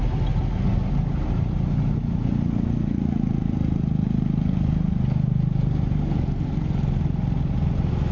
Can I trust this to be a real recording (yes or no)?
yes